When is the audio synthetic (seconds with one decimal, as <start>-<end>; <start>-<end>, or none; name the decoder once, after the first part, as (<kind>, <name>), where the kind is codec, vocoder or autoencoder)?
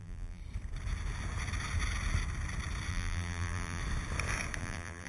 0.0-0.4 (vocoder, BigVGAN v2); 2.9-3.8; 4.6-5.1